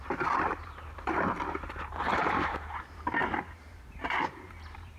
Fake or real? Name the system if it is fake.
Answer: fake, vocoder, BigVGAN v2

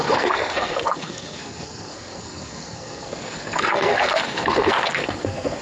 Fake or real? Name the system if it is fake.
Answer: fake, codec, SNAC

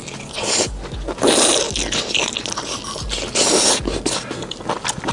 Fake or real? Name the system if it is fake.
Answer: real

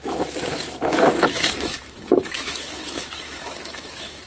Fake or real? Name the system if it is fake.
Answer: fake, autoencoder, DAC-VAE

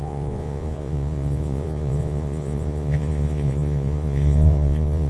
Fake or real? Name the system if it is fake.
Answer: fake, vocoder, Vocos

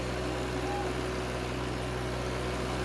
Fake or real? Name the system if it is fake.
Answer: real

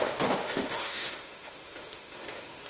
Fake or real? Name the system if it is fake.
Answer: fake, autoencoder, DAC-VAE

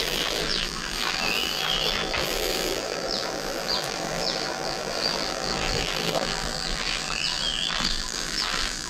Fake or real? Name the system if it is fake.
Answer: fake, vocoder, BigVGAN v2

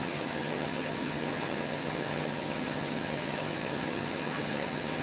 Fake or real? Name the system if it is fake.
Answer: fake, vocoder, HiFi-GAN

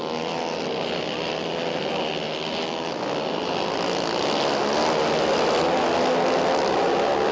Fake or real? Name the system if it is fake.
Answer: real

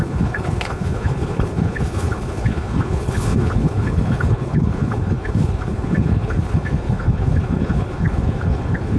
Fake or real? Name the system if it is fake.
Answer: fake, codec, HILCodec